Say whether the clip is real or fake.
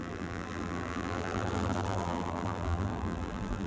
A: fake